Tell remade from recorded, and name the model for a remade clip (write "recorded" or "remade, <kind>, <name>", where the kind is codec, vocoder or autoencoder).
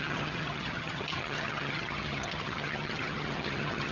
remade, vocoder, HiFi-GAN